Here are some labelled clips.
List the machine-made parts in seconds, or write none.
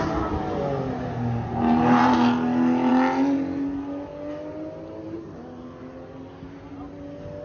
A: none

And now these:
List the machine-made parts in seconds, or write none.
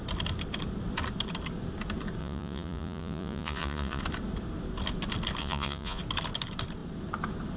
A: 2.2-4.0; 5.4-6.0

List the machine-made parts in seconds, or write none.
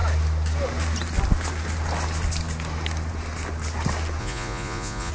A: 4.2-5.1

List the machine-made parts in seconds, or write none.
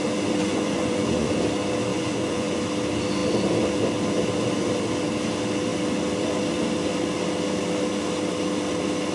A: 0.4-1.3; 1.9-2.6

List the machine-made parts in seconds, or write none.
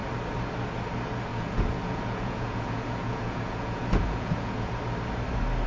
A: 1.3-4.7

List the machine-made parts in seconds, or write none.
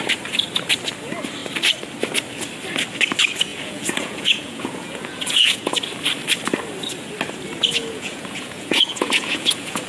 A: 3.5-5.7; 7.8-9.9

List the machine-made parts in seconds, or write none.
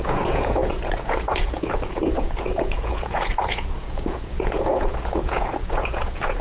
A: 0.0-6.4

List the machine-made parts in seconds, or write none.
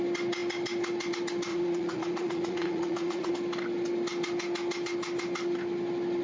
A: 1.5-3.3